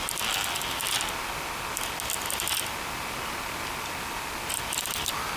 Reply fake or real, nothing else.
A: real